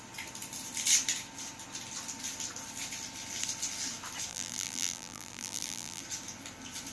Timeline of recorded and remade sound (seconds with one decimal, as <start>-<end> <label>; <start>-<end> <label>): 0.0-4.3 recorded; 4.3-6.0 remade; 6.0-6.9 recorded